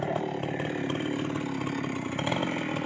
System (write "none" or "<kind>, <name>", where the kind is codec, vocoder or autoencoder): none